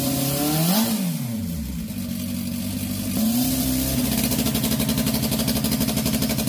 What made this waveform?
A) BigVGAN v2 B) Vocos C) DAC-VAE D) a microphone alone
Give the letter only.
D